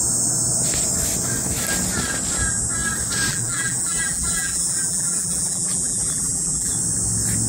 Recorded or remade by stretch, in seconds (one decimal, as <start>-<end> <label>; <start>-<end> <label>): 0.0-3.3 recorded; 3.3-6.7 remade; 6.7-7.5 recorded